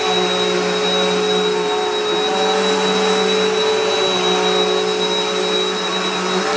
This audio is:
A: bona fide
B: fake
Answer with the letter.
A